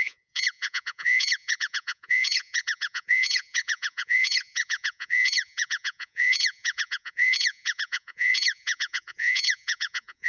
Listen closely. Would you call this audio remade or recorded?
remade